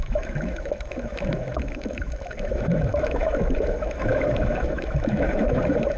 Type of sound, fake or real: fake